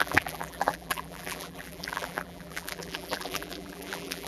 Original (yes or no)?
no